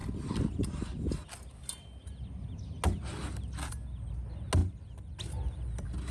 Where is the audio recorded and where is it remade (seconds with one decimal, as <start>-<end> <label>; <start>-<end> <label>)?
0.0-4.6 recorded; 4.6-5.2 remade; 5.2-6.1 recorded